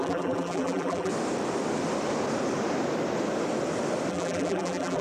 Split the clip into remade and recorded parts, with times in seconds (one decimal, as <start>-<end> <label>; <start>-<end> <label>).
0.0-1.1 remade; 1.1-4.1 recorded; 4.1-5.0 remade